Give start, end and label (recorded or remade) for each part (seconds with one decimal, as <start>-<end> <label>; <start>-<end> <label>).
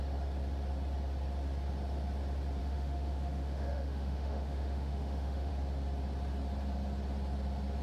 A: 0.0-2.6 recorded; 2.6-5.5 remade; 5.5-7.8 recorded